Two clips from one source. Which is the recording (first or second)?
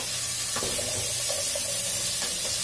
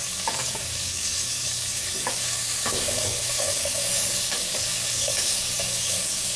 first